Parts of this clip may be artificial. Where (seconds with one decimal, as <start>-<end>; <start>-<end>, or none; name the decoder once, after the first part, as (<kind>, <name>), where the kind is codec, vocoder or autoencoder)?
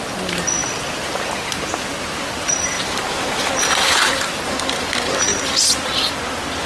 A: none